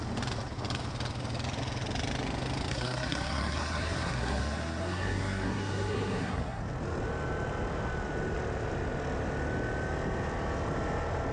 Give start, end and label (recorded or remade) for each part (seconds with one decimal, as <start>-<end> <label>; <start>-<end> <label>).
0.0-2.7 recorded; 2.7-6.6 remade; 6.6-11.3 recorded